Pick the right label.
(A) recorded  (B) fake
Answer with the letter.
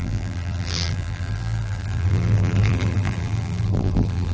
B